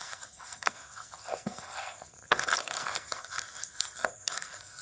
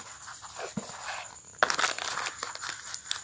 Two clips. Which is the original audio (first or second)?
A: second